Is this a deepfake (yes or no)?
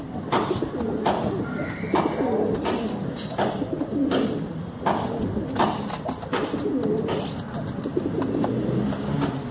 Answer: no